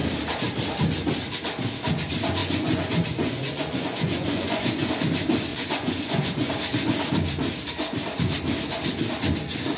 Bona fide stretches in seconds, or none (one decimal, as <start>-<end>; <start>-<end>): 0.0-2.4; 4.9-5.5; 6.5-9.8